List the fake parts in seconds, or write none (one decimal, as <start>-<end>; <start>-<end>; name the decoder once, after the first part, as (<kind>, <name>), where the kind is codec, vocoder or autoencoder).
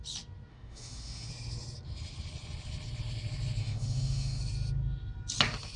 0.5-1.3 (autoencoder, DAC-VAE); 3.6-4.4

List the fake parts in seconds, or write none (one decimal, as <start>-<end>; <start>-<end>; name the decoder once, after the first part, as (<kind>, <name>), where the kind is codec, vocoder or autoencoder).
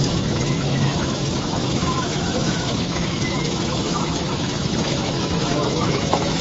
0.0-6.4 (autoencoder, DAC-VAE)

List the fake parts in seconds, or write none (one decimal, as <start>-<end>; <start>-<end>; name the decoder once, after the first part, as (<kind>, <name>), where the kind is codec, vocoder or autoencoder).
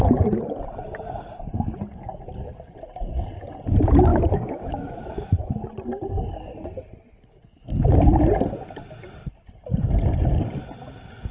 4.1-5.1 (autoencoder, DAC-VAE)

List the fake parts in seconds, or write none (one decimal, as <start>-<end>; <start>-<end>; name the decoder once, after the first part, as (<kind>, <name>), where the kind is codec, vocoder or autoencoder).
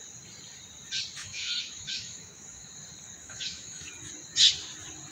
1.2-2.7 (autoencoder, DAC-VAE); 3.2-3.9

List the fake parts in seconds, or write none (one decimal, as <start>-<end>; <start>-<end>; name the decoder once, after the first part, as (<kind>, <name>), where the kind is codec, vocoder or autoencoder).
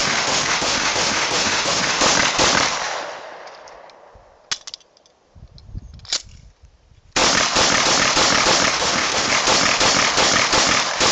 0.0-2.0 (autoencoder, DAC-VAE); 8.7-9.3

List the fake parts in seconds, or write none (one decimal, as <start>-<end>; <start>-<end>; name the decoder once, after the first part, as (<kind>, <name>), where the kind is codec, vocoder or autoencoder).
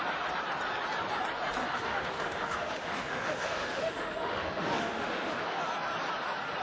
1.6-5.6 (autoencoder, DAC-VAE)